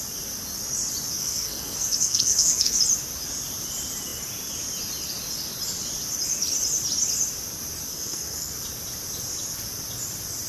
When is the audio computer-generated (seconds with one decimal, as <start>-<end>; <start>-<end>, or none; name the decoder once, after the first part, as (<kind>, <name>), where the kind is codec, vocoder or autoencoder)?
1.2-2.8 (codec, SNAC); 7.9-8.5